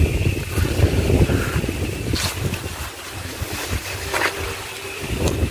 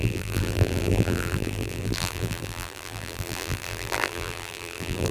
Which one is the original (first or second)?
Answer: first